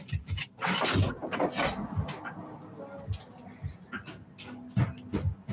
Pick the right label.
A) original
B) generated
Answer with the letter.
A